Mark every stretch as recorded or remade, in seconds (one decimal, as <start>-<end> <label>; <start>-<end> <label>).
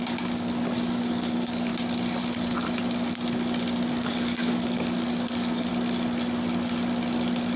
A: 0.0-1.7 remade; 1.7-3.9 recorded; 3.9-5.7 remade; 5.7-7.6 recorded